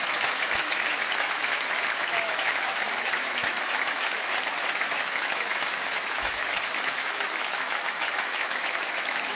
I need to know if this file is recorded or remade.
remade